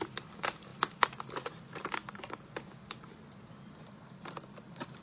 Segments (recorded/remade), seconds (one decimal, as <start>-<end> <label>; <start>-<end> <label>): 0.0-2.0 recorded; 2.0-4.6 remade; 4.6-5.0 recorded